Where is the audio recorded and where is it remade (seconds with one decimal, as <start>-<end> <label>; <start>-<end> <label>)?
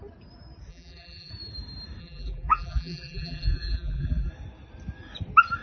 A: 0.0-0.7 recorded; 0.7-1.3 remade; 1.3-2.0 recorded; 2.0-4.3 remade; 4.3-5.6 recorded